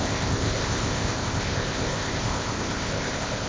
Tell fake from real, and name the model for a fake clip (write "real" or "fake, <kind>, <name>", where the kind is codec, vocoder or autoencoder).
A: fake, codec, ZipCodec